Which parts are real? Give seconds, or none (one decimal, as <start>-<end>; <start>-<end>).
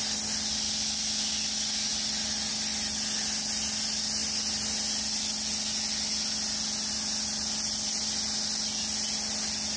0.0-9.8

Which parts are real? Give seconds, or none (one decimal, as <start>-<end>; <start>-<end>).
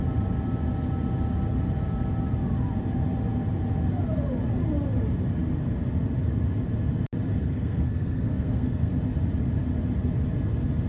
0.0-7.4; 8.9-10.9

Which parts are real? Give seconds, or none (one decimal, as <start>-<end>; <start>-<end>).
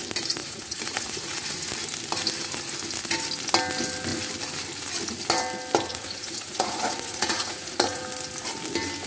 0.0-0.4; 1.7-5.9; 8.0-9.1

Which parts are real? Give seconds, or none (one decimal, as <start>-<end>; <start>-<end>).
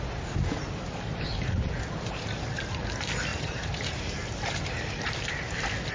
0.0-3.3; 5.5-5.9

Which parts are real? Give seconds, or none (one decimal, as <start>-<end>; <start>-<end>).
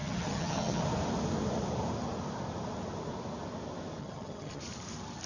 0.8-4.0; 4.6-5.3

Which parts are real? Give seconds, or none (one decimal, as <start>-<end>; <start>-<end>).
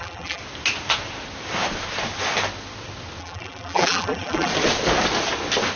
0.4-3.2; 4.5-5.8